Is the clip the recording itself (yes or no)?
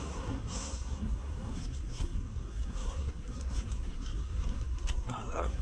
no